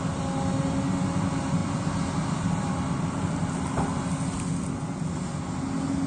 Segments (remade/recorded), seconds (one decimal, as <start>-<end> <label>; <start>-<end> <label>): 0.0-6.1 recorded